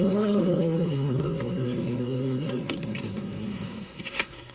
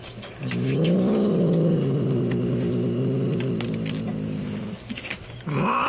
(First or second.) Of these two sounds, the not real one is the first